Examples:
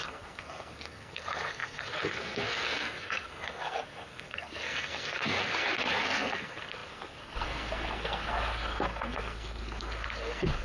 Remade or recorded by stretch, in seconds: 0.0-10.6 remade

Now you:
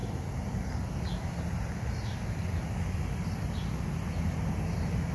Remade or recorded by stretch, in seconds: 0.0-5.1 recorded